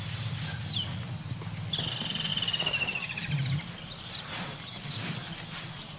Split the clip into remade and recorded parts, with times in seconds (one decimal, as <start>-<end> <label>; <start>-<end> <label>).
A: 0.0-6.0 recorded